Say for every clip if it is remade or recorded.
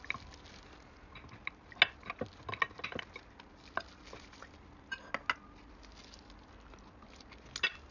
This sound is recorded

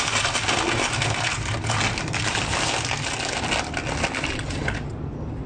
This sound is recorded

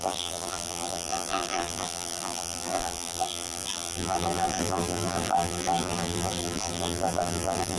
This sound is remade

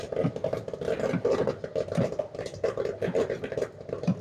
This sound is recorded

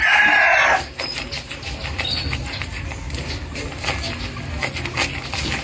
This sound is recorded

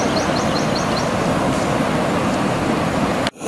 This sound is recorded